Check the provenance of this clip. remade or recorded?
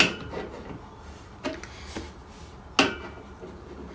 recorded